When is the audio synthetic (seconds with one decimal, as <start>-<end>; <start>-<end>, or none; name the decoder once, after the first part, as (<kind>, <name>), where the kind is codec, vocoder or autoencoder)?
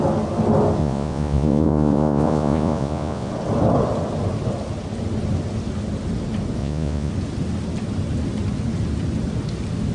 0.8-3.3 (vocoder, Vocos); 6.6-7.1